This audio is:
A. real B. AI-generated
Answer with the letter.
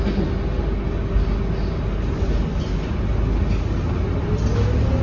A